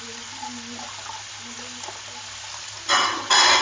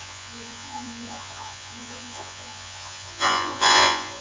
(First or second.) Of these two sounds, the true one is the first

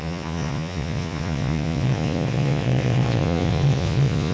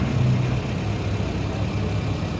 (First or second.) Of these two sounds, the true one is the second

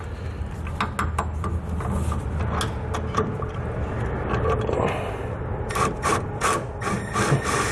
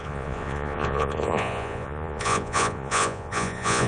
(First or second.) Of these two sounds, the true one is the first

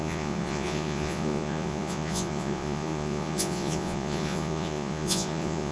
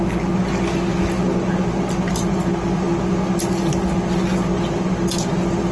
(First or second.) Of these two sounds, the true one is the second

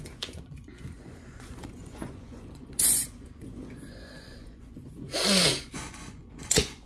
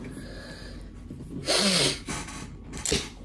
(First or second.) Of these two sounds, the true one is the second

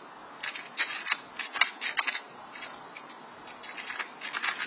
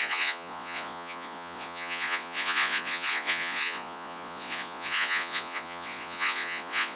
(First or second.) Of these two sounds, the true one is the first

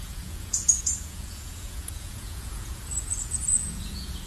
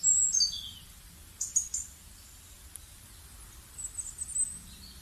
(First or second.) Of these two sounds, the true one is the second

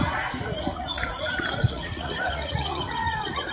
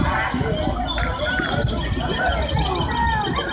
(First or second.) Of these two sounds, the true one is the second